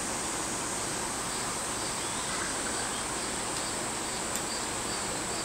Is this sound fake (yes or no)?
no